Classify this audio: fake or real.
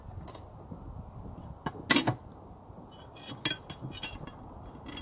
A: real